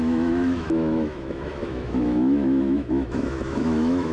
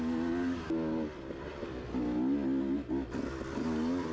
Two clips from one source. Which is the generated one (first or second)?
first